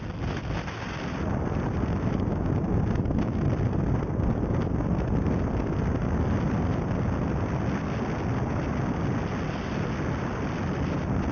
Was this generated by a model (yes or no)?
no